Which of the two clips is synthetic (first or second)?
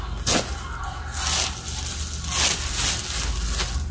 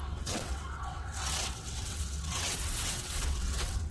second